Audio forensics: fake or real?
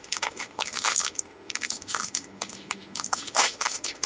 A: fake